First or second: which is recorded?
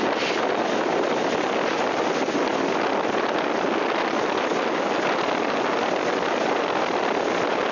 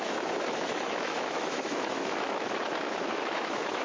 first